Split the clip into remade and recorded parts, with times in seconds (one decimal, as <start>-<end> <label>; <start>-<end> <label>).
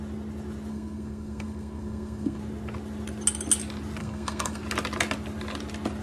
0.0-0.7 recorded; 0.7-2.4 remade; 2.4-4.0 recorded; 4.0-4.6 remade; 4.6-6.0 recorded